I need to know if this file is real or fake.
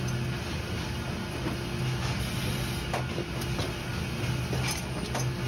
real